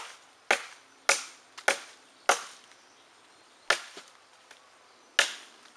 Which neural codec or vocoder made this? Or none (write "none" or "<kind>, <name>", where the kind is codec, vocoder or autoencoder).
none